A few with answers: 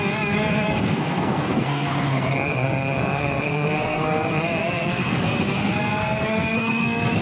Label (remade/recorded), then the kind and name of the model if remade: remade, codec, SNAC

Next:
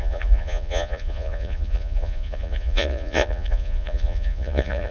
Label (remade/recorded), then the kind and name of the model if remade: remade, vocoder, Vocos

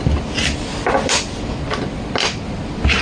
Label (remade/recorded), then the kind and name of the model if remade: recorded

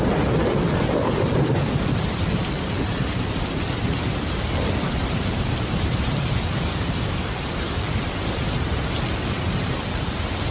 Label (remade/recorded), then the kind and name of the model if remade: remade, vocoder, BigVGAN v2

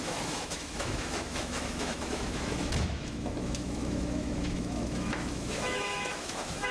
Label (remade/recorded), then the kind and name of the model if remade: remade, autoencoder, DAC-VAE